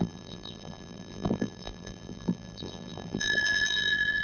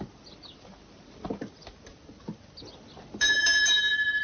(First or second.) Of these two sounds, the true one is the second